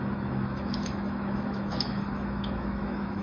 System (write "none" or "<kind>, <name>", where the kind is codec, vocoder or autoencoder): autoencoder, DAC-VAE